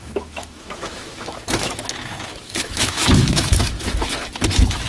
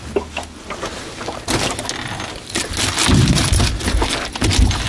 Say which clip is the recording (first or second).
second